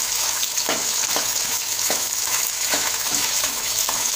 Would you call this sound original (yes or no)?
no